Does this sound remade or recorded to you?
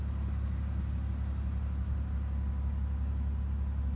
recorded